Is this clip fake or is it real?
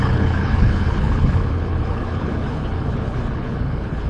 fake